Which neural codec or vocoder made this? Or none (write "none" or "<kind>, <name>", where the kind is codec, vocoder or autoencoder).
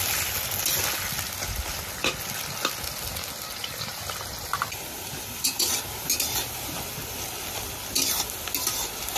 none